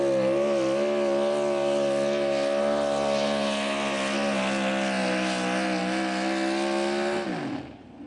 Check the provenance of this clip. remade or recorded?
recorded